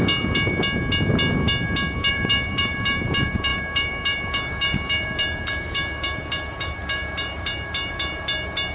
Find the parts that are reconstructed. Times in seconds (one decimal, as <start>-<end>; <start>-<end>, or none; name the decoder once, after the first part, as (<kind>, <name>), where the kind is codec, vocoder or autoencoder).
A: 2.1-8.7 (vocoder, BigVGAN v2)